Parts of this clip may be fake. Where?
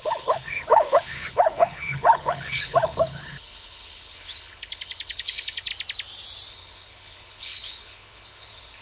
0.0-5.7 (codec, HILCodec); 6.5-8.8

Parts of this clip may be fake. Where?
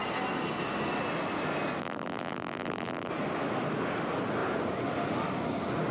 1.8-3.1 (vocoder, BigVGAN v2)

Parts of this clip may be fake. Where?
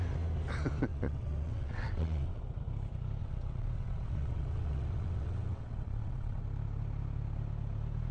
0.9-2.4 (vocoder, WaveNeXt); 3.2-6.4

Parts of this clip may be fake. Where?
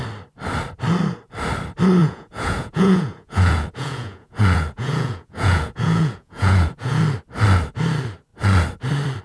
2.0-7.0 (vocoder, Vocos)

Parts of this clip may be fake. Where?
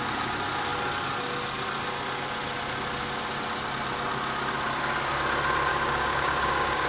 5.7-6.9 (codec, DAC)